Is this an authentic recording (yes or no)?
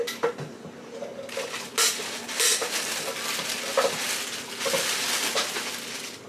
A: yes